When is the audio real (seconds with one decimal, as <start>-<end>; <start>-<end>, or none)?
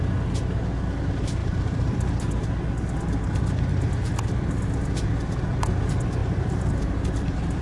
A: 0.0-1.4; 2.1-6.2; 6.7-7.6